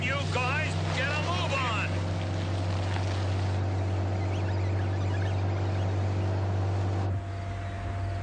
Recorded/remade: recorded